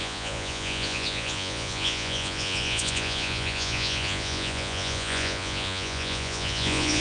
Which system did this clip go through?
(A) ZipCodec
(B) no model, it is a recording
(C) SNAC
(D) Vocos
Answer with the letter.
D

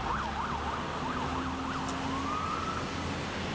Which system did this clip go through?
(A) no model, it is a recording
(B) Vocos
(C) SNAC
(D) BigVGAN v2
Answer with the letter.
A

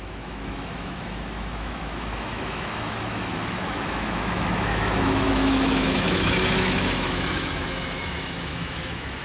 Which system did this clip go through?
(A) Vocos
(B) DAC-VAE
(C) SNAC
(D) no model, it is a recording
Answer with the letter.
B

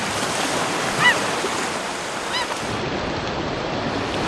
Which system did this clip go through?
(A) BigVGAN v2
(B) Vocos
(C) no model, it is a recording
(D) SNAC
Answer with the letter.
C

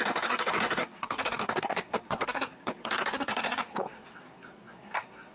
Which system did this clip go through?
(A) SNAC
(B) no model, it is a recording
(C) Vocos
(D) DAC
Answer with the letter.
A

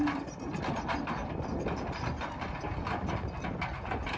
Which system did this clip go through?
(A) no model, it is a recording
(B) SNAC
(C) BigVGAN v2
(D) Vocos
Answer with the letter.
A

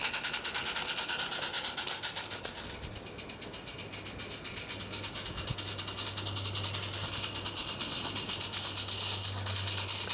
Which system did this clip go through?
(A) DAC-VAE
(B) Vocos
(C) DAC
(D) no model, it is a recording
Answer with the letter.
D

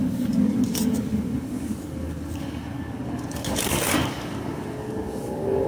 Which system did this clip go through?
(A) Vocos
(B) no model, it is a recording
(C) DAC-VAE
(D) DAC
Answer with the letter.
D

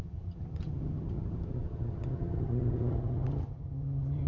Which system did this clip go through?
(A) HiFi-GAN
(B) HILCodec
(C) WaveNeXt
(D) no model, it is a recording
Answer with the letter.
A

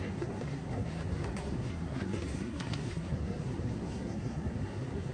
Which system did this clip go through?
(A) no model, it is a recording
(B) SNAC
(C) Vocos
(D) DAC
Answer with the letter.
B